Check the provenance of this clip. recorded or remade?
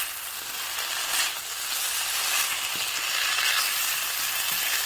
recorded